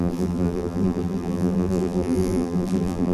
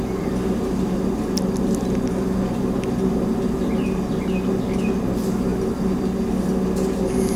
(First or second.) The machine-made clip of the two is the first